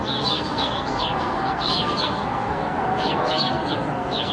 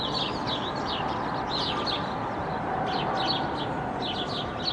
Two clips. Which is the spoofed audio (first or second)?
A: first